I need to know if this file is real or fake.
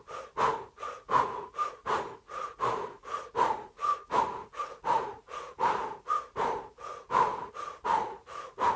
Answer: fake